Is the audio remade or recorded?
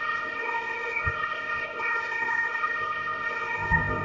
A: remade